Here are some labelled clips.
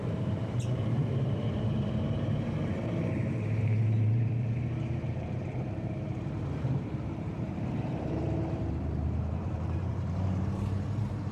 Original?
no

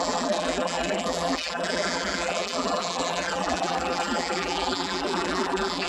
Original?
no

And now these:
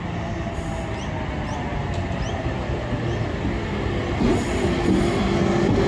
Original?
yes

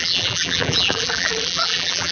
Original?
no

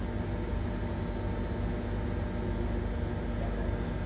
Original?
yes